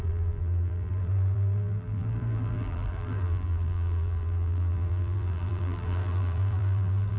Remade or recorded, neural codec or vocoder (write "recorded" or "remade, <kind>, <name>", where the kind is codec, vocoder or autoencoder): remade, vocoder, BigVGAN v2